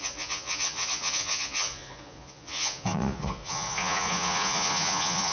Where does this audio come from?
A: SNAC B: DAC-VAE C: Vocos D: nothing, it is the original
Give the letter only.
C